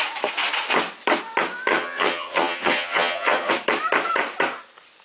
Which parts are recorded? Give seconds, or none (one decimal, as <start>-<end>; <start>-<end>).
0.0-1.7; 3.5-5.0